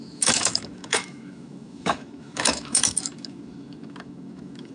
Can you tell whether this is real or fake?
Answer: fake